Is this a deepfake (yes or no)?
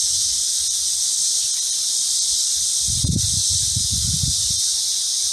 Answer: no